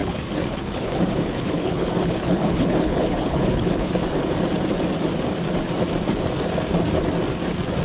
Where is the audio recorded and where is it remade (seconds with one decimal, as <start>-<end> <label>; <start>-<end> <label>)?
0.0-3.9 remade; 3.9-7.8 recorded